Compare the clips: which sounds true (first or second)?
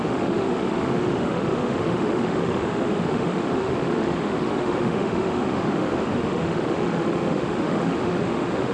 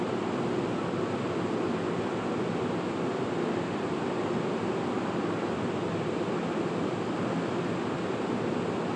second